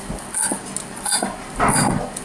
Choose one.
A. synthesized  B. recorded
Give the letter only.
B